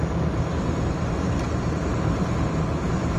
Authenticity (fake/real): real